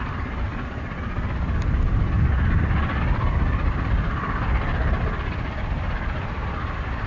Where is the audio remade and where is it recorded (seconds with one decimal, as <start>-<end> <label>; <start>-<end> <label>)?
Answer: 0.0-7.1 recorded